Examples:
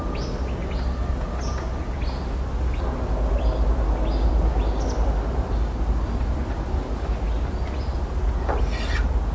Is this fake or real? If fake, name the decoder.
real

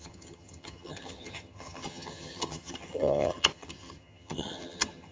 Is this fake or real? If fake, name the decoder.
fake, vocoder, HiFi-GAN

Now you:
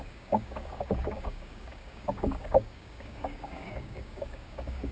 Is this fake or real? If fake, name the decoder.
fake, codec, DAC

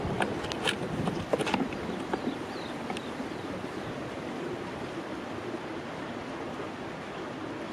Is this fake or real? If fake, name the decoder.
real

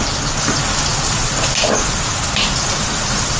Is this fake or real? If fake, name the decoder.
real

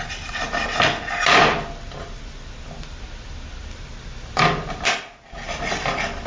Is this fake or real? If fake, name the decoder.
real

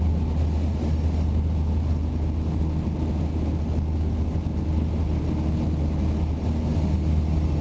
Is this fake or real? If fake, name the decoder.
real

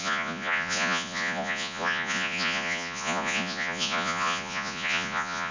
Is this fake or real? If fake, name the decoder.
fake, vocoder, Vocos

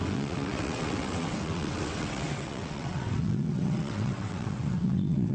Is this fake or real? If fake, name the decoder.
fake, vocoder, WaveNeXt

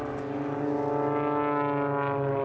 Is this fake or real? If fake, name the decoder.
real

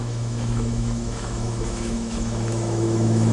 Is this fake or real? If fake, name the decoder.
fake, autoencoder, DAC-VAE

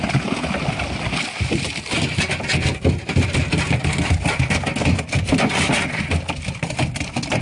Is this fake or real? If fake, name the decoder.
real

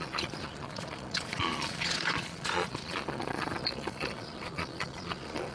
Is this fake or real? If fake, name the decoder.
fake, vocoder, Vocos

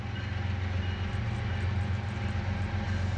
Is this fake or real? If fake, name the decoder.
real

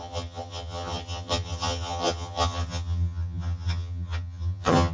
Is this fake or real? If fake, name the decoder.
fake, vocoder, HiFi-GAN